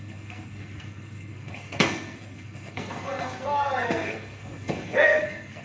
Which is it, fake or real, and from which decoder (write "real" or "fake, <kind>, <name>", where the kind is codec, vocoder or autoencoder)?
fake, codec, SNAC